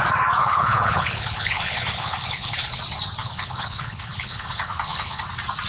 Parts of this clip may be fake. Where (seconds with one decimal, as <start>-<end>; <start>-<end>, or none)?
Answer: 0.4-2.8; 3.2-5.2